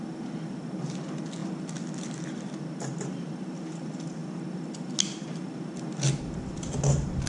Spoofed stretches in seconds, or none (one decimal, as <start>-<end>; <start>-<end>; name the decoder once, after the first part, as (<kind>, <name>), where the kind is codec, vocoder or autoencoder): none